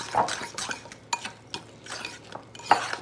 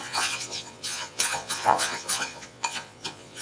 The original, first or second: first